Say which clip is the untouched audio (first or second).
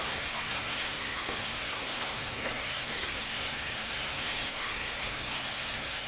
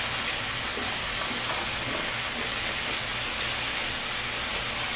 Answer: second